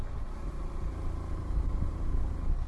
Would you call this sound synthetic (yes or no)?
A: no